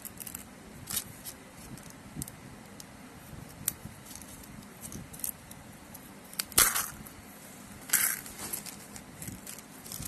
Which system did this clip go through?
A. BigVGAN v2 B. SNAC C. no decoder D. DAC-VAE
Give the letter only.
C